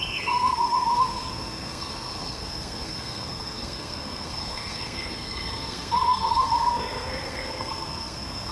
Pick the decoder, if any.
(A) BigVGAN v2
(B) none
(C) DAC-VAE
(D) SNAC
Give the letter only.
D